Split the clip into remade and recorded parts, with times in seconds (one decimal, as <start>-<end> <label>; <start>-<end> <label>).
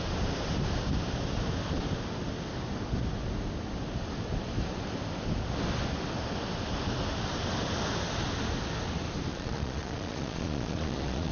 0.0-9.3 recorded; 9.3-11.3 remade